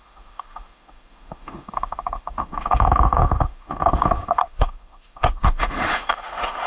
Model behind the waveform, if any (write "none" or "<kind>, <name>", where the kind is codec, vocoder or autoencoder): autoencoder, DAC-VAE